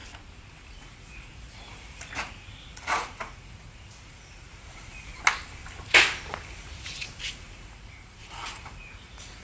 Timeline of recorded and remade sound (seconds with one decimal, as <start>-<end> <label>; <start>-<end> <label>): 0.0-0.8 recorded; 0.8-5.1 remade; 5.1-6.6 recorded; 6.6-9.4 remade